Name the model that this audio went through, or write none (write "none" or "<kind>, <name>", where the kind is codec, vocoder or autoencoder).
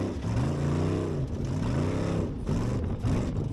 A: none